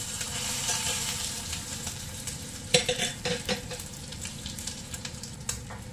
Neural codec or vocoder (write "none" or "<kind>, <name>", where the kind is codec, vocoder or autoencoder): vocoder, BigVGAN v2